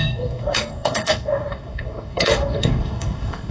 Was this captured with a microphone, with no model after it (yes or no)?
no